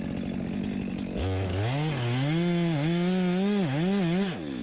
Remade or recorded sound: recorded